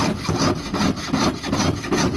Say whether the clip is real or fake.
real